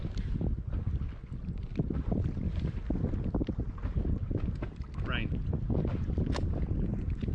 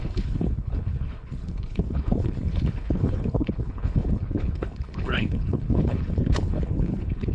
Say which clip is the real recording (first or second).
first